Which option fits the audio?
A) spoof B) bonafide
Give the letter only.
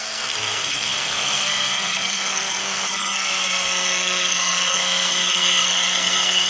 A